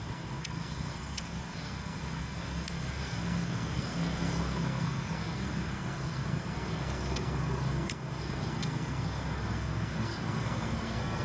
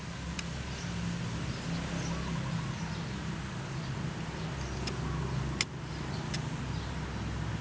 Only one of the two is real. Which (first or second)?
second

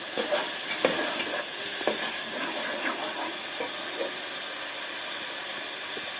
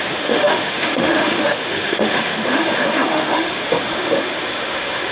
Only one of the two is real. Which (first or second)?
first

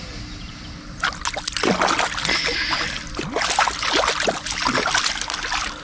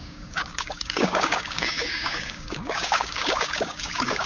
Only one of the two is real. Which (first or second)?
first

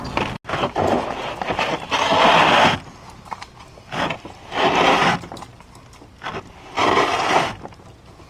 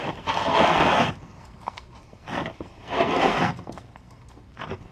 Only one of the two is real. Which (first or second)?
first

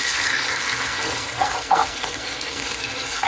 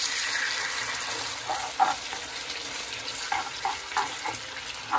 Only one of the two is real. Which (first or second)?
second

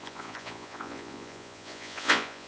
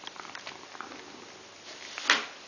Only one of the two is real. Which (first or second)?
second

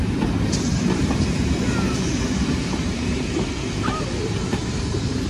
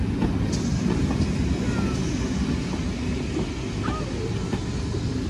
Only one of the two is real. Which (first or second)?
second